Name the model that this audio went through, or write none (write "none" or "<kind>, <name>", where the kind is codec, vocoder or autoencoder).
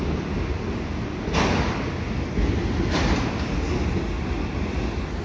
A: none